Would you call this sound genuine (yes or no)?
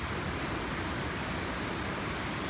yes